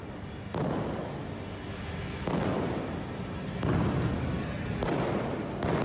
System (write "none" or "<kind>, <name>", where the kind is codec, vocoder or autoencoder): none